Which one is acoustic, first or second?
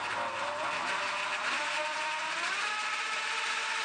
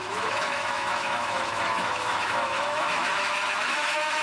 first